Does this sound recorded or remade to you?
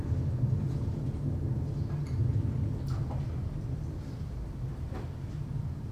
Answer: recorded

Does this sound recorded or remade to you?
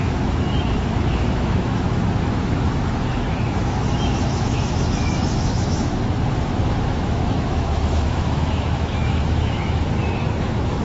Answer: remade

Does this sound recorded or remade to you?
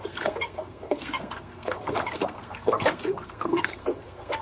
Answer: remade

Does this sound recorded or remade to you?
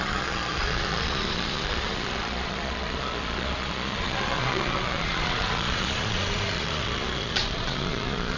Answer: remade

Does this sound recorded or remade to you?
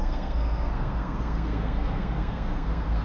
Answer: remade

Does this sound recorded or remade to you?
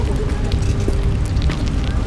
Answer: recorded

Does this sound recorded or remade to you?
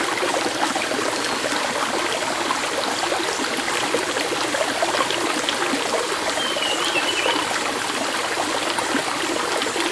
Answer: recorded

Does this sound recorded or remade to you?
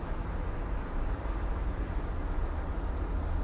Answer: recorded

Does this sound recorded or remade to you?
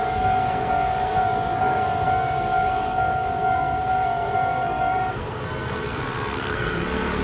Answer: remade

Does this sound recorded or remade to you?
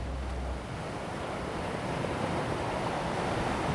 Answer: recorded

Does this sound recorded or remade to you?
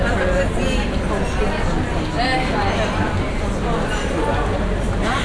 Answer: recorded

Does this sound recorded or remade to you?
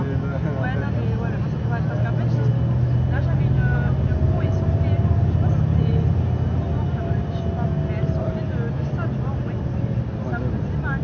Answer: recorded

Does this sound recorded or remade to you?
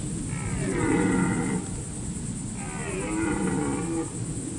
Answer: recorded